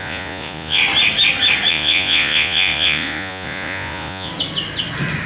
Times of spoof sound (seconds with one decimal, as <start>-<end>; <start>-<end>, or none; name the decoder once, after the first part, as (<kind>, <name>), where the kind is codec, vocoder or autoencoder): 0.0-0.8 (vocoder, Vocos); 1.7-4.3